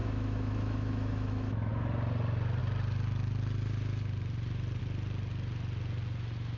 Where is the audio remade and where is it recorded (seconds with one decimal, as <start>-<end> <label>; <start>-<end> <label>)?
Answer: 0.0-1.7 remade; 1.7-6.6 recorded